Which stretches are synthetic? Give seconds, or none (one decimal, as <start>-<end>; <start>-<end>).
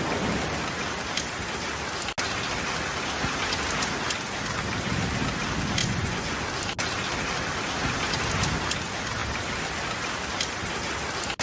5.8-6.4